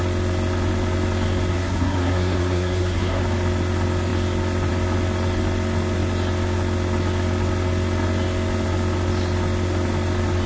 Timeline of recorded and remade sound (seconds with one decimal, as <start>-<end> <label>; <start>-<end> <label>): 0.0-1.5 recorded; 1.5-3.2 remade; 3.2-10.5 recorded